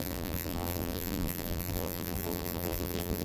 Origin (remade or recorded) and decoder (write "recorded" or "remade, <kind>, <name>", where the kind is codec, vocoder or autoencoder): remade, vocoder, BigVGAN v2